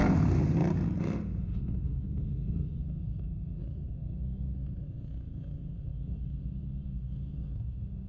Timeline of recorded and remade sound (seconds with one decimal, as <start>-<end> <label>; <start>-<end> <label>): 0.0-1.0 recorded; 1.0-8.1 remade